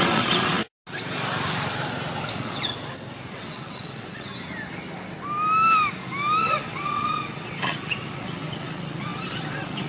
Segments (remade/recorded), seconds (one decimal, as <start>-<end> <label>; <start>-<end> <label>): 0.0-0.6 remade; 0.6-2.3 recorded; 2.3-2.7 remade; 2.7-3.3 recorded; 3.3-4.3 remade; 4.3-6.4 recorded; 6.4-9.9 remade